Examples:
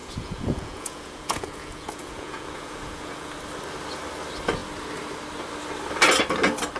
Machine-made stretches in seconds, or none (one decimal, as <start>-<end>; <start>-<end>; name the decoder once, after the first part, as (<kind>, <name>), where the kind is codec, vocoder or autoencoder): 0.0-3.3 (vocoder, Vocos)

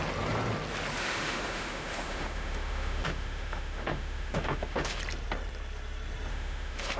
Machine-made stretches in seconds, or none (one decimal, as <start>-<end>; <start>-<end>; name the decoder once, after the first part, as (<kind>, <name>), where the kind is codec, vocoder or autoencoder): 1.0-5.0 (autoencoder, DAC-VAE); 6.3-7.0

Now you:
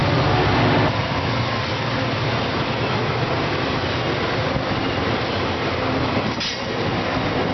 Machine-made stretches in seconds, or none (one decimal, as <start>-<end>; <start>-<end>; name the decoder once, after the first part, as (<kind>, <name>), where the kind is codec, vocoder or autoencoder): none

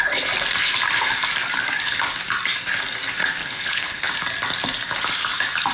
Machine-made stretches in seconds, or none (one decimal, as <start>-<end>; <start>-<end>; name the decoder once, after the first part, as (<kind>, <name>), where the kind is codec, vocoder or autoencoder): 3.4-4.1 (codec, HILCodec)

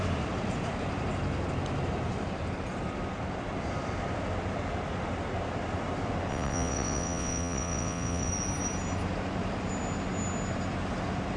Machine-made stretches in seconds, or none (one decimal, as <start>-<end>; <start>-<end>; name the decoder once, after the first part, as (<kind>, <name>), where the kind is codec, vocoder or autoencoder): 6.3-8.3 (vocoder, WaveNeXt)